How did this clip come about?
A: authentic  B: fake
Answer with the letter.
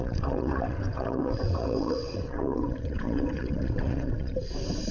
B